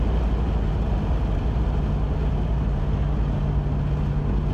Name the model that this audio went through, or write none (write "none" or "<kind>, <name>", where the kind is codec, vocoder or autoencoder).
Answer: none